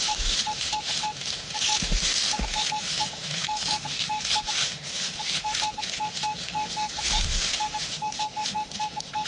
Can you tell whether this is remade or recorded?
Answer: remade